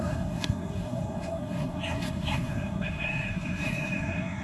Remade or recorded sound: remade